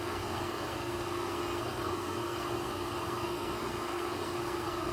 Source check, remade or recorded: remade